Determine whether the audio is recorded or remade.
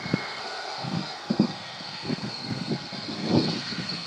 remade